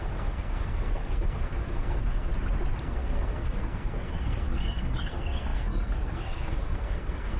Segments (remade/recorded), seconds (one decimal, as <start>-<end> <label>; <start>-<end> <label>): 0.0-2.3 remade; 2.3-2.8 recorded; 2.8-7.4 remade